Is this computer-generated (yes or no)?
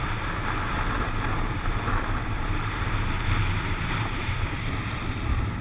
no